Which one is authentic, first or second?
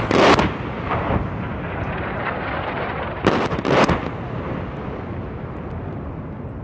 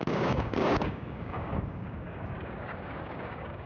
first